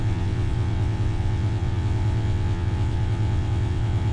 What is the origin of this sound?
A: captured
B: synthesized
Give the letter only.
B